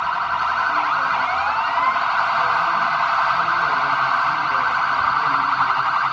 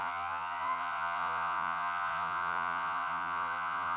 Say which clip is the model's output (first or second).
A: second